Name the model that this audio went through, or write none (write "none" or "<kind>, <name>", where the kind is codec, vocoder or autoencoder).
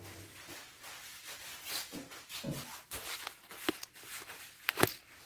none